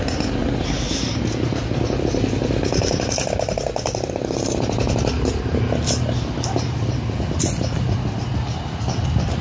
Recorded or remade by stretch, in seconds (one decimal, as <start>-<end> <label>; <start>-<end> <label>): 0.0-9.4 recorded